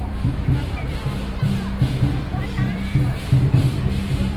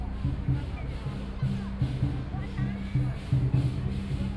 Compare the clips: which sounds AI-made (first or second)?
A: first